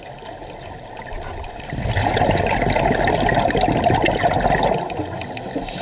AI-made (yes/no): no